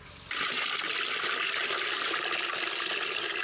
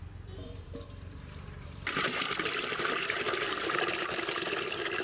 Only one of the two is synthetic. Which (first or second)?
second